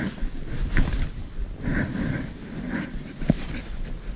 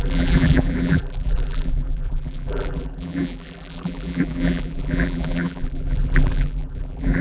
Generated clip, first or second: second